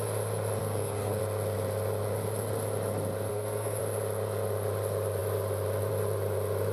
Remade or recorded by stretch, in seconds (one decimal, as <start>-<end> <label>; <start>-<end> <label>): 0.0-0.6 recorded; 0.6-1.2 remade; 1.2-3.3 recorded; 3.3-3.8 remade; 3.8-6.7 recorded